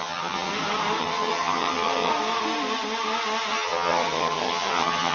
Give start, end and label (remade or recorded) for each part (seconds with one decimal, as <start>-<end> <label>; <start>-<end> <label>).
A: 0.0-0.5 remade; 0.5-1.0 recorded; 1.0-2.1 remade; 2.1-3.5 recorded; 3.5-5.1 remade